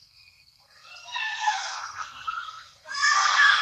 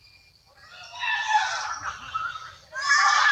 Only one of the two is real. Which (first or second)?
second